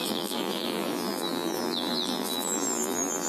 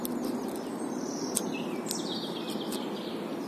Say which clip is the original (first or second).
second